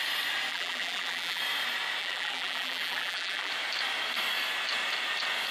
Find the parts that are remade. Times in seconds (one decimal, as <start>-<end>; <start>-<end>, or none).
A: 0.5-1.4; 2.0-3.5